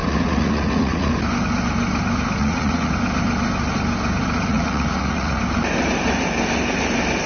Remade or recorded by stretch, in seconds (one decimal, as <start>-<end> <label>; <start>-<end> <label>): 0.0-1.1 remade; 1.1-2.4 recorded; 2.4-2.9 remade; 2.9-4.5 recorded; 4.5-5.4 remade; 5.4-7.3 recorded